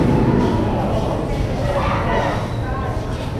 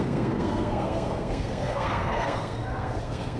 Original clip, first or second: first